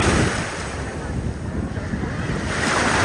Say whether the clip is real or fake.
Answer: fake